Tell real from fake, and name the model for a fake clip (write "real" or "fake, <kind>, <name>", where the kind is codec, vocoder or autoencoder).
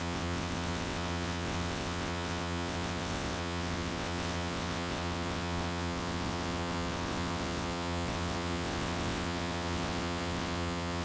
fake, vocoder, WaveNeXt